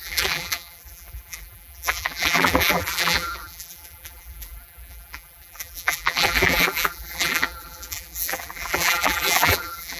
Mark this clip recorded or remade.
remade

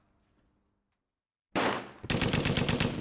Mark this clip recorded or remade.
recorded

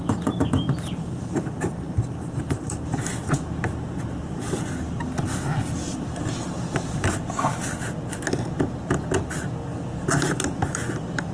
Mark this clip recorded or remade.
recorded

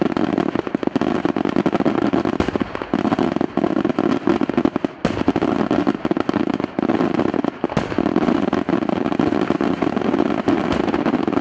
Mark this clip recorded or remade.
recorded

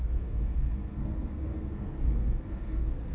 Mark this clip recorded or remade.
remade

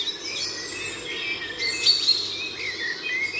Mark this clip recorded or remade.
recorded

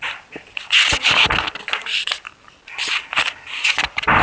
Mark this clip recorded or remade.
recorded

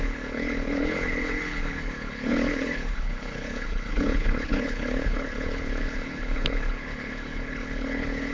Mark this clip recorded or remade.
remade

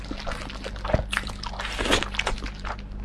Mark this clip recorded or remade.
recorded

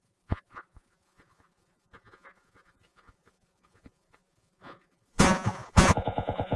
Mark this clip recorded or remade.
remade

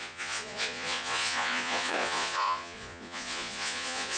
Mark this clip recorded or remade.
remade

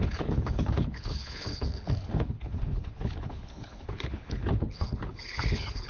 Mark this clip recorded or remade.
remade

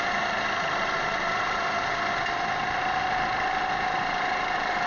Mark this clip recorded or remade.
recorded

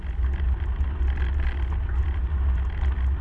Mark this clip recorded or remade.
recorded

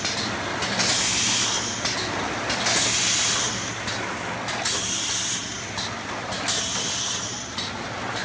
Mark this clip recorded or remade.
recorded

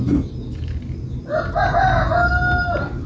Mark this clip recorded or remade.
recorded